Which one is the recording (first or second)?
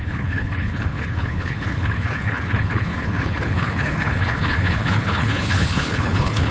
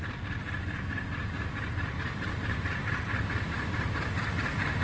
second